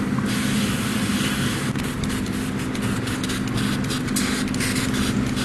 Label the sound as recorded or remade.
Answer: recorded